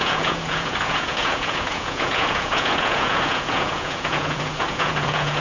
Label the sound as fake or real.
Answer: fake